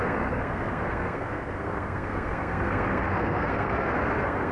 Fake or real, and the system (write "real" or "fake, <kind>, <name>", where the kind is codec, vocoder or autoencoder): fake, codec, SNAC